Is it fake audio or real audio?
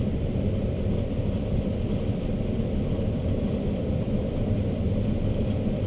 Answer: fake